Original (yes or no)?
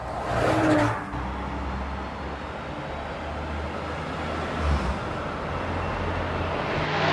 yes